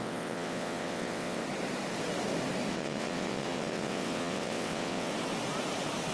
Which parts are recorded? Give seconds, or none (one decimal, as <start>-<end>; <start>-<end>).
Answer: 1.4-2.7; 5.1-6.1